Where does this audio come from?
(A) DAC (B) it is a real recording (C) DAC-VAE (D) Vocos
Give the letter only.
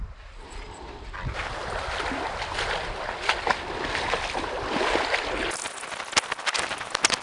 B